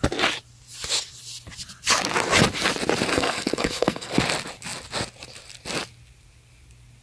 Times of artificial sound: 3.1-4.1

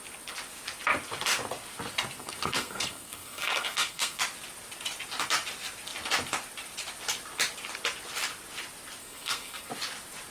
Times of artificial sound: 2.2-4.2; 9.0-9.7

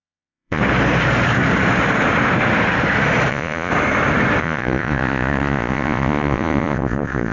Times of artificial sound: 0.0-0.6; 3.3-3.7; 4.4-7.3

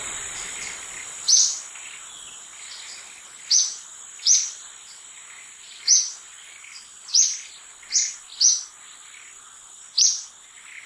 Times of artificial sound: none

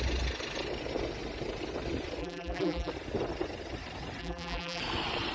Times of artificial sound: 2.2-2.9; 4.2-4.8

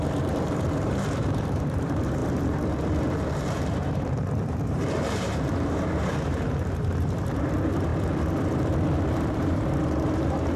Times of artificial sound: 0.0-7.9; 9.1-10.6

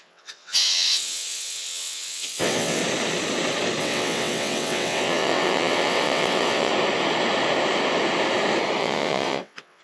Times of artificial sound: 0.0-2.8; 3.8-6.7; 8.8-9.8

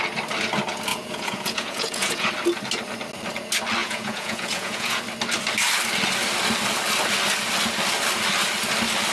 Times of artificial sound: 0.9-2.3; 3.8-5.0